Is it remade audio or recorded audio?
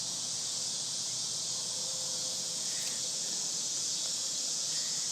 remade